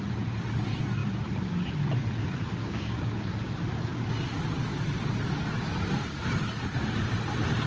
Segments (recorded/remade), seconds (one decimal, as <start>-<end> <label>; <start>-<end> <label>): 0.0-2.6 recorded; 2.6-3.3 remade; 3.3-7.7 recorded